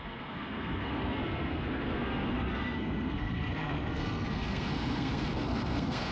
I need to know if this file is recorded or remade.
remade